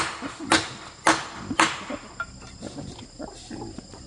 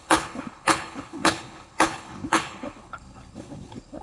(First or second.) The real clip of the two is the first